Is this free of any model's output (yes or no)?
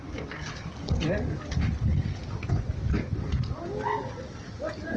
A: yes